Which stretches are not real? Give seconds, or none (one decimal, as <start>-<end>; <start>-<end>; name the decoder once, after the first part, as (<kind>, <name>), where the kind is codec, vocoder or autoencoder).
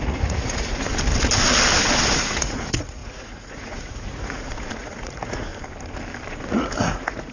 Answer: 0.0-0.9 (vocoder, Vocos); 2.1-5.5; 6.3-7.3